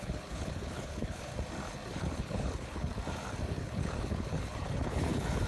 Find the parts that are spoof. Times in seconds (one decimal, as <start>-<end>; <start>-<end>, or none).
0.0-1.3; 1.9-2.9; 3.5-5.5